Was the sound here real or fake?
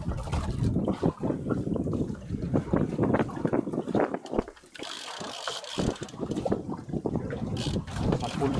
fake